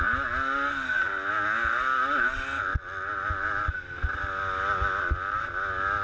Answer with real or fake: real